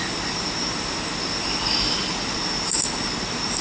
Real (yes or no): yes